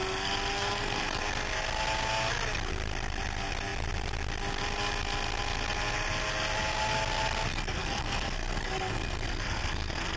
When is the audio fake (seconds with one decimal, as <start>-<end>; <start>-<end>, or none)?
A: 0.5-1.2; 7.5-10.2